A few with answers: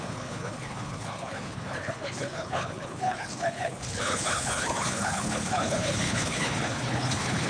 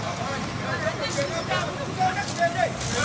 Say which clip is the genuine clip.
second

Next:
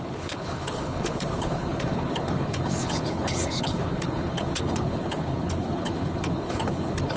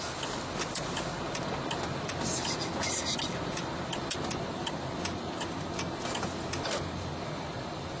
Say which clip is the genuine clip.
second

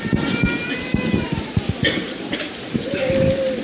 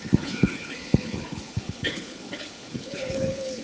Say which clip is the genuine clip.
first